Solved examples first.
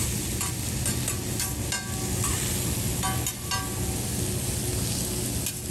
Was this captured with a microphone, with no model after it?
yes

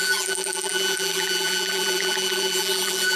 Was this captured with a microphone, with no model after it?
no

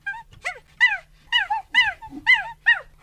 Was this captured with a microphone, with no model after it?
yes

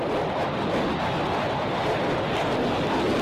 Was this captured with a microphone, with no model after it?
yes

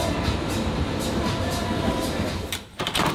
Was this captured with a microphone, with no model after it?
no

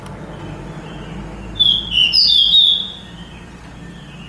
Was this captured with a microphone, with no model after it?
yes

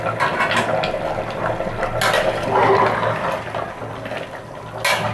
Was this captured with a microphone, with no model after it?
yes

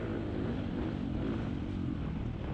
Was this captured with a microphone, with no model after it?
yes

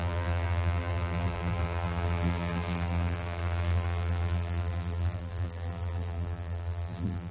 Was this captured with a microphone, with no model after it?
no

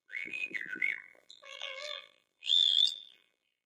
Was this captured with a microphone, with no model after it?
no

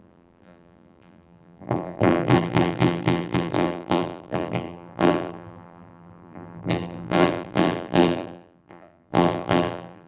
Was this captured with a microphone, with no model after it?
no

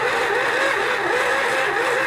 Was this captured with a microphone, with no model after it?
yes